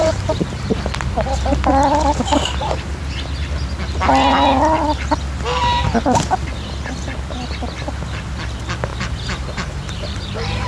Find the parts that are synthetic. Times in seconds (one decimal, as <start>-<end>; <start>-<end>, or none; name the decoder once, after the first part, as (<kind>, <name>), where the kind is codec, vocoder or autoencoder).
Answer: 0.0-0.7 (vocoder, BigVGAN v2); 8.9-10.7